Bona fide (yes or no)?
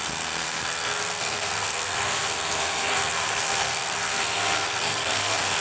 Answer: no